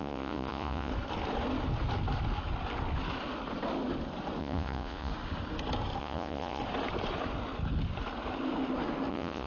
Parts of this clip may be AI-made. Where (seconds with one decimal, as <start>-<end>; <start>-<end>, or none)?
0.0-0.9; 4.4-5.1; 6.0-6.6; 9.1-9.5